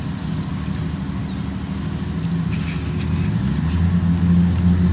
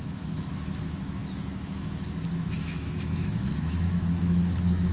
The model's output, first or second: second